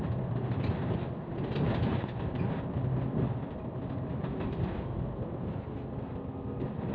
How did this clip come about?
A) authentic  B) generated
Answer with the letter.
A